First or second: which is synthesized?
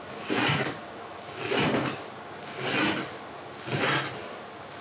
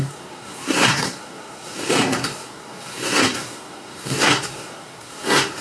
second